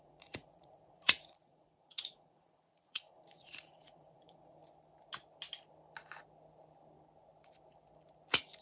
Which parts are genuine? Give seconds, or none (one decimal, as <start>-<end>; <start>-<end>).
4.6-8.6